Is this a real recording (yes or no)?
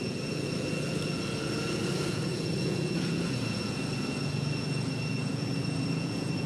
no